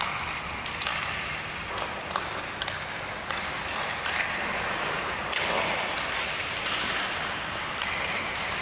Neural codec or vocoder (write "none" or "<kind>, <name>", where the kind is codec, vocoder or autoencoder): none